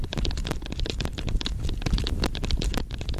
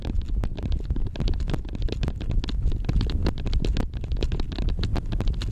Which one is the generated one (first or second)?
first